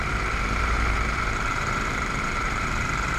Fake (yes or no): yes